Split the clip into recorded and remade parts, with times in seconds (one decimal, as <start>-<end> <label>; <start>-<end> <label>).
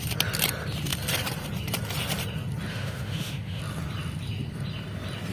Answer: 0.0-2.7 recorded; 2.7-3.6 remade; 3.6-5.3 recorded